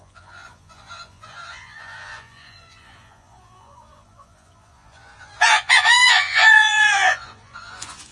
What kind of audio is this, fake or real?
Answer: fake